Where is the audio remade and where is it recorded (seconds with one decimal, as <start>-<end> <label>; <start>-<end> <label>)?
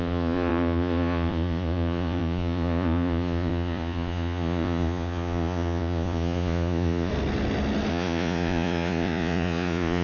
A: 0.0-7.1 remade; 7.1-7.9 recorded; 7.9-10.0 remade